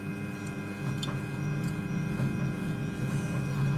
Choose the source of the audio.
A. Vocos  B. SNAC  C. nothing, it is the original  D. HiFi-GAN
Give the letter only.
A